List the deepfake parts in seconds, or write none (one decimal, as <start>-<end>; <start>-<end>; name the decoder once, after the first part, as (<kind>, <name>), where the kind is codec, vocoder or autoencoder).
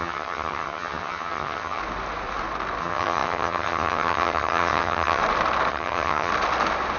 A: 0.0-1.8 (vocoder, HiFi-GAN); 2.8-5.2; 5.7-6.3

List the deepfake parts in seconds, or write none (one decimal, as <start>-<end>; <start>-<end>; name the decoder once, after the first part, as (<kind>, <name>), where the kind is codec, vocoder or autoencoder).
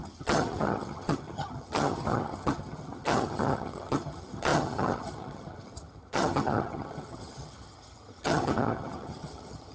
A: 0.0-9.7 (vocoder, HiFi-GAN)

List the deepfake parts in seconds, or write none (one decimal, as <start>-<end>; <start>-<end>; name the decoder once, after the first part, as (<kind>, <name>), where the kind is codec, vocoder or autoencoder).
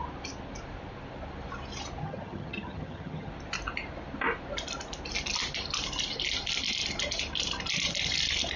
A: 2.0-3.3 (vocoder, HiFi-GAN)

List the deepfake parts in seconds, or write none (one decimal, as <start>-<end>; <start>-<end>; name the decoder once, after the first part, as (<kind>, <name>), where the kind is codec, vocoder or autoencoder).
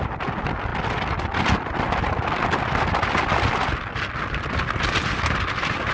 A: none